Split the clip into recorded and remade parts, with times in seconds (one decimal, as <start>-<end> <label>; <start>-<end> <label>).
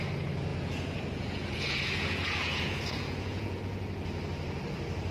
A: 0.0-0.5 recorded; 0.5-3.6 remade; 3.6-5.1 recorded